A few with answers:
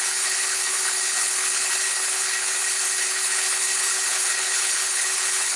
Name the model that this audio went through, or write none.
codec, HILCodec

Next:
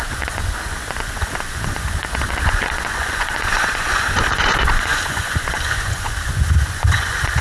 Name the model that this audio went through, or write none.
vocoder, Vocos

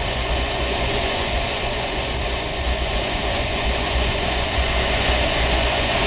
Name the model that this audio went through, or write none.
vocoder, Vocos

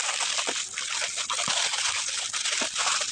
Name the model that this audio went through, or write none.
none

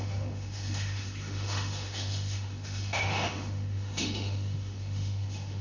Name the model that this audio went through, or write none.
autoencoder, DAC-VAE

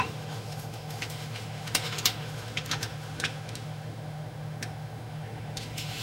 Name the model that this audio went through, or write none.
autoencoder, DAC-VAE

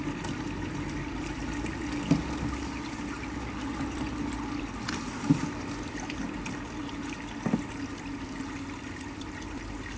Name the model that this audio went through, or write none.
none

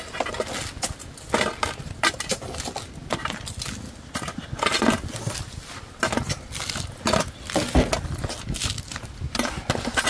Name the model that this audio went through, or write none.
none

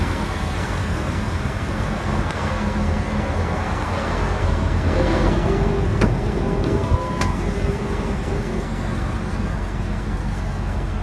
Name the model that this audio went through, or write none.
codec, SNAC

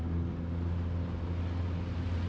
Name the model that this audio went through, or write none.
none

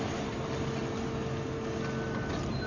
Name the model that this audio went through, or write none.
none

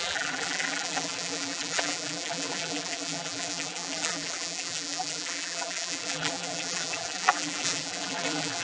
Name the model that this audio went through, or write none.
vocoder, BigVGAN v2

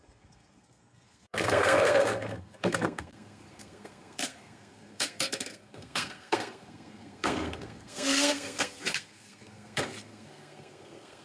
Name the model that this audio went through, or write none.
codec, SNAC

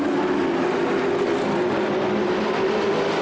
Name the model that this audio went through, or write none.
none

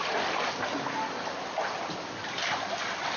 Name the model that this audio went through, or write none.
none